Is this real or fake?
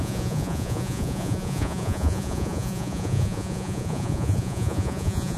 fake